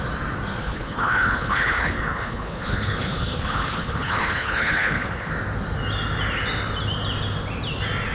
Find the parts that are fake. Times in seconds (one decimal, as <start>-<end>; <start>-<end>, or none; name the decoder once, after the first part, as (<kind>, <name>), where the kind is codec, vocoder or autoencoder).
0.6-5.3 (codec, HILCodec)